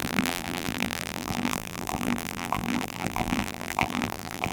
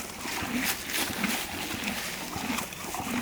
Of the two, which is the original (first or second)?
second